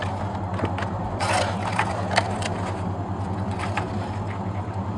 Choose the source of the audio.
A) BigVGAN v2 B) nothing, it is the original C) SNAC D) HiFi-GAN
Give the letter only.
B